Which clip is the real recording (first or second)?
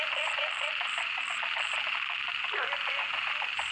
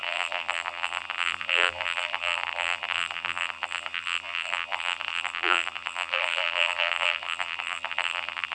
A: first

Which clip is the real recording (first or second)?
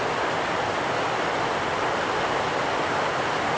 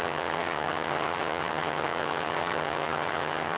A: first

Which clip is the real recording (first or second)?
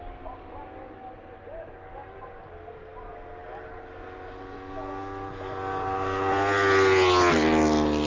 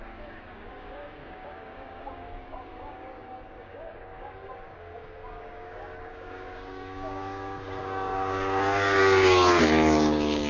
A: first